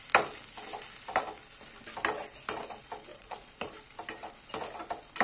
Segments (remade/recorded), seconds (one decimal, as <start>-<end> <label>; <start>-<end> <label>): 0.0-3.1 recorded; 3.1-3.7 remade; 3.7-5.2 recorded